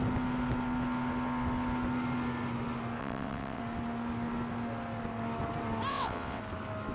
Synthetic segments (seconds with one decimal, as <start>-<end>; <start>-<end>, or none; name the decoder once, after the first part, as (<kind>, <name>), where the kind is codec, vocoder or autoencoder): 3.0-3.6 (vocoder, WaveNeXt); 5.9-6.4